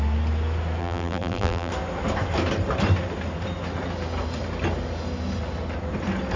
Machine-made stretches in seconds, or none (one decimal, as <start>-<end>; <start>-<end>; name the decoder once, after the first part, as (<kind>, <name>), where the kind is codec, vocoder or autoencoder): 0.8-1.7 (vocoder, BigVGAN v2)